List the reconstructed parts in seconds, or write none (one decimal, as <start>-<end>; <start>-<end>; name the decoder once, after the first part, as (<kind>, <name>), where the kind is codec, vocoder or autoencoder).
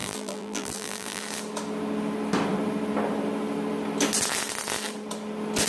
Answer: 0.0-1.2 (vocoder, BigVGAN v2)